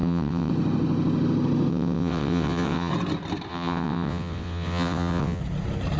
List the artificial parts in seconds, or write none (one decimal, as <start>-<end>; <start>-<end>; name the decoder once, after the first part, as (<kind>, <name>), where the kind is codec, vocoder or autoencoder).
0.0-0.5 (vocoder, WaveNeXt); 1.7-2.9; 3.5-5.4